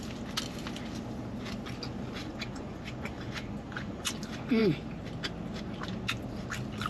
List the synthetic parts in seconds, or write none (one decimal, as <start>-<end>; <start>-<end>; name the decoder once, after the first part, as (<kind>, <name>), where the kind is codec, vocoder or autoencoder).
2.2-4.1 (vocoder, Vocos)